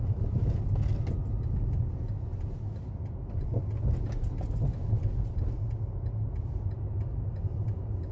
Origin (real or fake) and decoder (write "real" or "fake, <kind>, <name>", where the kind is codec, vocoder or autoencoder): real